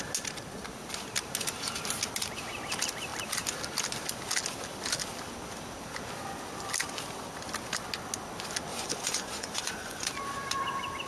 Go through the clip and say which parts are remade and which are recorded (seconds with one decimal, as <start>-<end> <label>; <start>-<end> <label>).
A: 0.0-8.7 recorded; 8.7-10.1 remade; 10.1-11.1 recorded